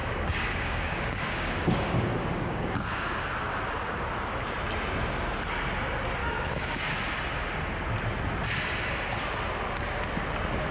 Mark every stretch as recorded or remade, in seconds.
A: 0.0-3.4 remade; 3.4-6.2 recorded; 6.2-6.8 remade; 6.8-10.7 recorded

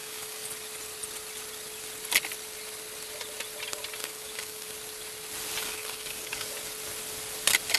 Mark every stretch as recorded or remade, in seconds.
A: 0.0-0.5 remade; 0.5-4.0 recorded; 4.0-4.7 remade; 4.7-5.6 recorded; 5.6-6.5 remade; 6.5-7.8 recorded

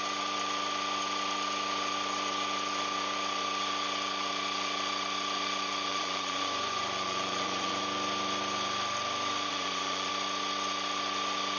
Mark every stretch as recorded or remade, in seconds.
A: 0.0-5.9 recorded; 5.9-7.8 remade; 7.8-9.5 recorded; 9.5-10.1 remade; 10.1-11.6 recorded